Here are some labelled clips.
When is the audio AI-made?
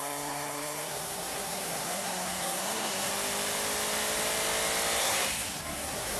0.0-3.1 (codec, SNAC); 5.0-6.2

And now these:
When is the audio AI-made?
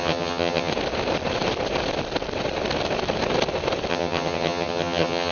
0.0-0.7 (vocoder, HiFi-GAN); 3.9-5.3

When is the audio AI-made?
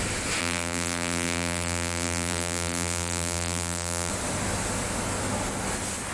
0.4-4.1 (vocoder, BigVGAN v2)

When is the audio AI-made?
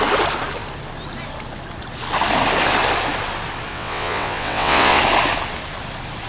3.7-5.0 (vocoder, WaveNeXt)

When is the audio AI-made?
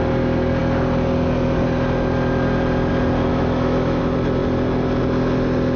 3.3-4.0 (autoencoder, DAC-VAE)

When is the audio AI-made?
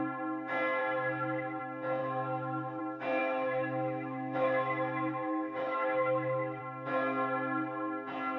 0.8-1.6 (autoencoder, DAC-VAE); 2.0-2.8; 3.2-6.6